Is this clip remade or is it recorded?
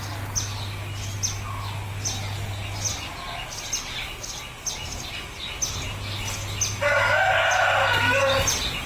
recorded